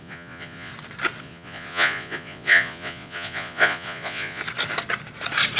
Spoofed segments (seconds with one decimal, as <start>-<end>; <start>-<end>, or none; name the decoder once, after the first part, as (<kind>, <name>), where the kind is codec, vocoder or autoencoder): 0.0-0.7 (vocoder, Vocos); 1.2-4.4